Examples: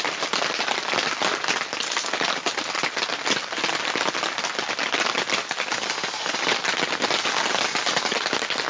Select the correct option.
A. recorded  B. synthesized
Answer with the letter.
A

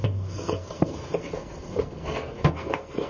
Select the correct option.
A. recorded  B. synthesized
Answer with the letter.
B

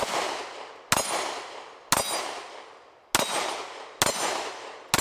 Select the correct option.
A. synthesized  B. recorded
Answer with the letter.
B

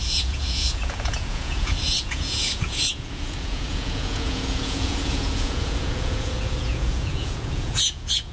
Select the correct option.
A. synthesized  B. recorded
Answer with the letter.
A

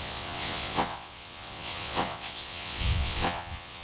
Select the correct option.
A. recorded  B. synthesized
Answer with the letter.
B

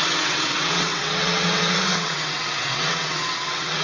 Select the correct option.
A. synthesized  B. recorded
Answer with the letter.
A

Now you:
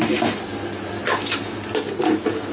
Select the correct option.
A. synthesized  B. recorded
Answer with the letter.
B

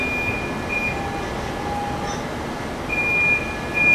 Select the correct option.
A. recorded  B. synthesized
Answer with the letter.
A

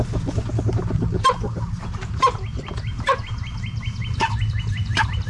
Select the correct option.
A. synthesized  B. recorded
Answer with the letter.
B